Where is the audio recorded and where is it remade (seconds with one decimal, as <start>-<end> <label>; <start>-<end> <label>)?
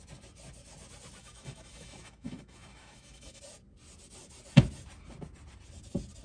0.0-1.2 recorded; 1.2-3.4 remade; 3.4-6.2 recorded